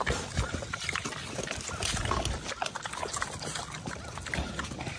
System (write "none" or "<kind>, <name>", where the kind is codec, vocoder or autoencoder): none